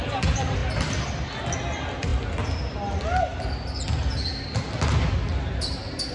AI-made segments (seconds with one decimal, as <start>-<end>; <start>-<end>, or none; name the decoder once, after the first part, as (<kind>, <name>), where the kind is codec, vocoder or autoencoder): none